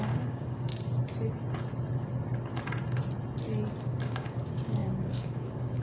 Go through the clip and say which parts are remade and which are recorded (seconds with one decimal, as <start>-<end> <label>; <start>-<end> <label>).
0.0-0.7 remade; 0.7-3.8 recorded; 3.8-5.8 remade